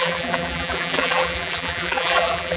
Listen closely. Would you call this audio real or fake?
fake